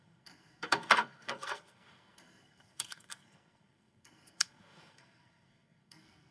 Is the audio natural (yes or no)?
no